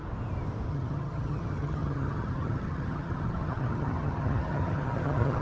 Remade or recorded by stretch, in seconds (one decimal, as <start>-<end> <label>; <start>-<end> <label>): 0.0-0.7 recorded; 0.7-5.4 remade